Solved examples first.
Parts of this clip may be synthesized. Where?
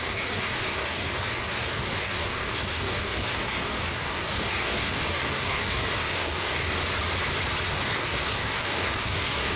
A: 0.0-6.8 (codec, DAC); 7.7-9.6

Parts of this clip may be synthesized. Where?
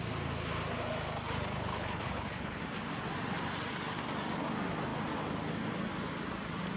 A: 1.7-2.6 (codec, HILCodec)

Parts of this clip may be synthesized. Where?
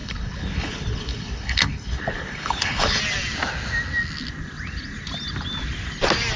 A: 0.0-3.0 (codec, HILCodec)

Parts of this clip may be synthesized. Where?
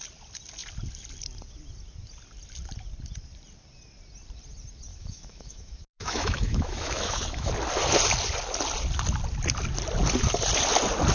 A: 4.9-7.5 (autoencoder, DAC-VAE)